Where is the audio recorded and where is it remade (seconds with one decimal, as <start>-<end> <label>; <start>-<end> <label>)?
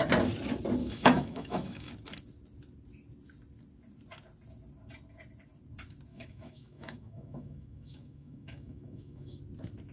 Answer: 0.0-0.8 recorded; 0.8-1.9 remade; 1.9-6.1 recorded; 6.1-9.4 remade; 9.4-9.9 recorded